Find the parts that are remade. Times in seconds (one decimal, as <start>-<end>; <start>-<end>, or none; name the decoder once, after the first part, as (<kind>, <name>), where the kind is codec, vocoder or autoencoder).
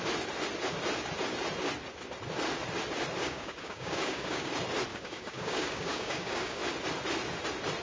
3.2-4.5 (codec, DAC); 4.9-6.6